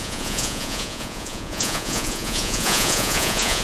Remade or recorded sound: remade